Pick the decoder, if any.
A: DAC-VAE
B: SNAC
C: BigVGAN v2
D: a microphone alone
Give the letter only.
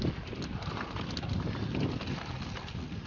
D